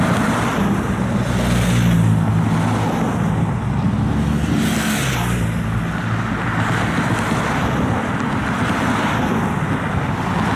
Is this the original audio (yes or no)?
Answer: yes